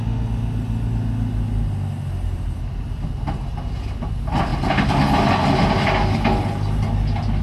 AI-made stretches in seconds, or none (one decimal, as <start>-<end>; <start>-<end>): none